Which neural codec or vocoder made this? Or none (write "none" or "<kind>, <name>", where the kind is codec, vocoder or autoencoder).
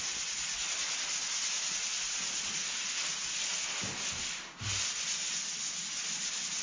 none